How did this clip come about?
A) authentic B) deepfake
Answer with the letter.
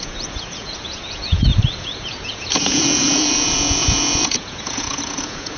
B